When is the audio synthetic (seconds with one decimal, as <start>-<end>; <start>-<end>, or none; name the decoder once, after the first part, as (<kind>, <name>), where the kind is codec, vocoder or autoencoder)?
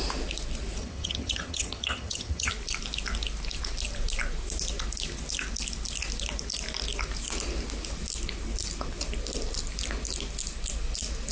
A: 0.8-2.5 (vocoder, HiFi-GAN)